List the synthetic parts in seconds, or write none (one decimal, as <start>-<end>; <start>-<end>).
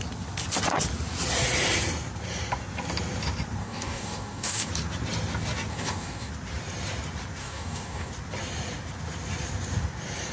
3.6-4.7; 5.7-6.3; 7.4-8.1